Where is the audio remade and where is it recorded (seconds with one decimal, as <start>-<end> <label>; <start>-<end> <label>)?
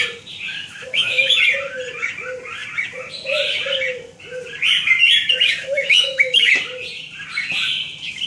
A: 0.0-0.5 recorded; 0.5-1.3 remade; 1.3-5.6 recorded; 5.6-6.5 remade; 6.5-8.3 recorded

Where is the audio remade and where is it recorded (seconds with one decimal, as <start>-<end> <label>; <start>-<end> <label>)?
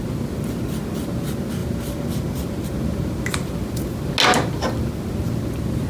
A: 0.0-5.9 recorded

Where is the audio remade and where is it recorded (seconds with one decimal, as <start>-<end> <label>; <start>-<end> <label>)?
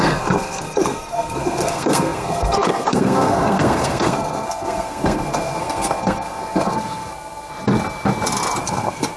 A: 0.0-7.5 remade; 7.5-8.6 recorded; 8.6-9.2 remade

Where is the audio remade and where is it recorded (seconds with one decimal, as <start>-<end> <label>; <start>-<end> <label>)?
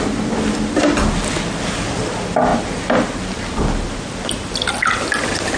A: 0.0-5.6 recorded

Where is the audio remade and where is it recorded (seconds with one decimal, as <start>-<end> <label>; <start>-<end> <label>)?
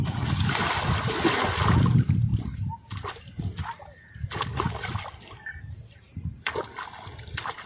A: 0.0-7.7 recorded